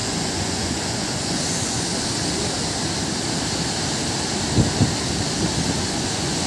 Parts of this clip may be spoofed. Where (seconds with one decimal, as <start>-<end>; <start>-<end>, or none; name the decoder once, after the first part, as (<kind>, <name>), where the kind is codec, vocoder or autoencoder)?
0.0-1.9 (vocoder, Vocos); 5.8-6.5